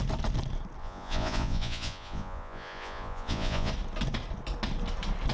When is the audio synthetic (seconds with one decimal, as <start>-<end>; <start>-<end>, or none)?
0.8-3.7